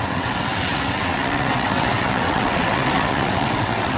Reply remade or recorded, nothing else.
remade